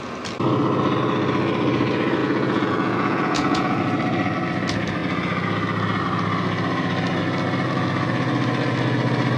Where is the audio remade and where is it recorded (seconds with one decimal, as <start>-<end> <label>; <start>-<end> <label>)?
0.0-2.2 recorded; 2.2-3.8 remade; 3.8-9.4 recorded